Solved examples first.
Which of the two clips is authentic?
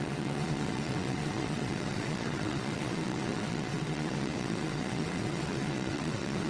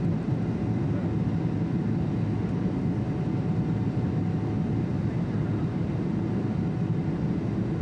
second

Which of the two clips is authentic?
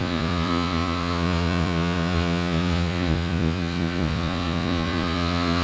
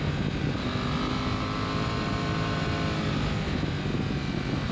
second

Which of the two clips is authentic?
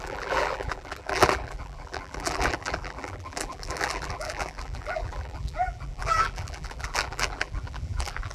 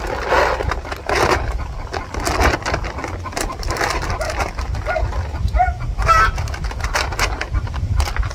second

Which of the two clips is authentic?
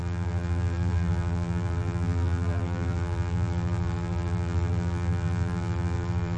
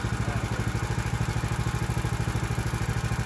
second